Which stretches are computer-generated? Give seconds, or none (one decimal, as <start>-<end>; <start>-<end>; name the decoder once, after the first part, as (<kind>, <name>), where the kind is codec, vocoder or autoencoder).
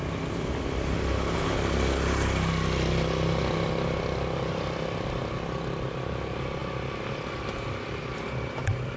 none